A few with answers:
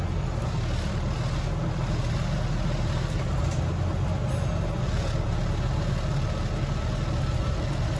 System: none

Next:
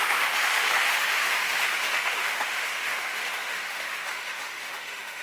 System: autoencoder, DAC-VAE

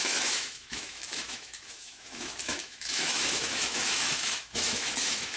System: autoencoder, DAC-VAE